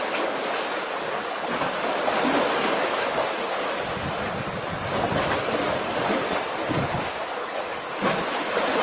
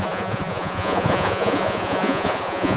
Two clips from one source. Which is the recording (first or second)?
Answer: first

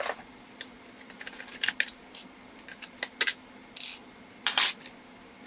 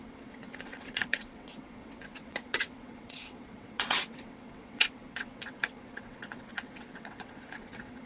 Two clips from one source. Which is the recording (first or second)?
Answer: first